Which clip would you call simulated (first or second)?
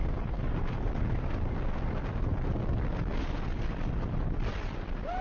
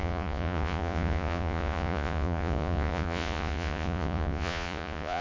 second